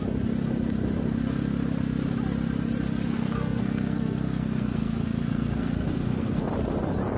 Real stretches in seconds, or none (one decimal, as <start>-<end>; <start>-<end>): 0.0-3.1; 6.4-7.2